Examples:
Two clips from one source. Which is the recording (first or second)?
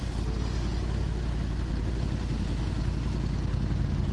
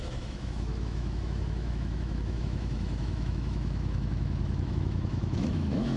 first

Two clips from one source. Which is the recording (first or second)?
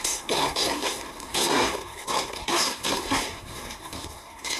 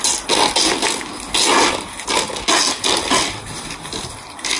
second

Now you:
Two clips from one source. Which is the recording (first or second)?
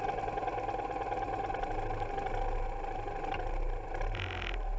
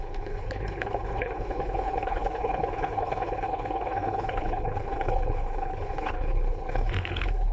first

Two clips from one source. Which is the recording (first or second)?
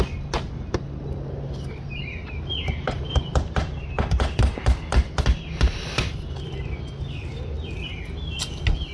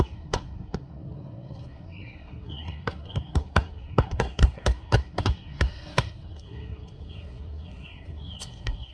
first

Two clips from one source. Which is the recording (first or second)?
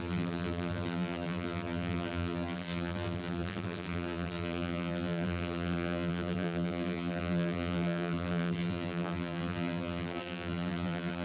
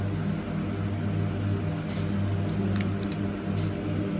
second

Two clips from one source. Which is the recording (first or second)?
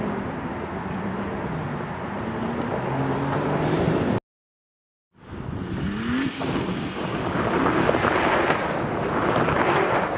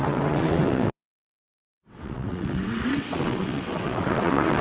first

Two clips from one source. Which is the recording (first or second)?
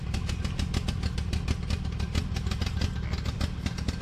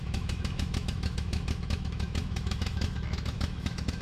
first